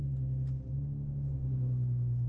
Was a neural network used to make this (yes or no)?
no